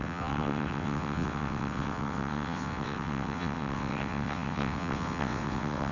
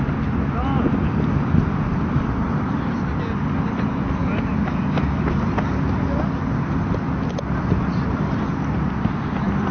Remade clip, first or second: first